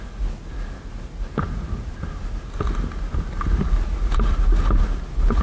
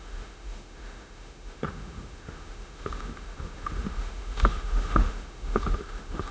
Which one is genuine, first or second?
first